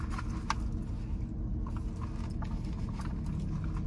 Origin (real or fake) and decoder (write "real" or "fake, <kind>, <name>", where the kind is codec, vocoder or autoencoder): real